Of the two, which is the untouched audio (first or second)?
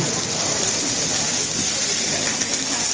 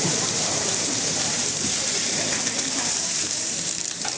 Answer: first